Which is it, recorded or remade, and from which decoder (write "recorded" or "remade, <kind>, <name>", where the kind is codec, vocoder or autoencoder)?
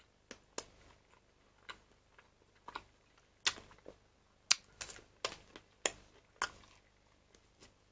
recorded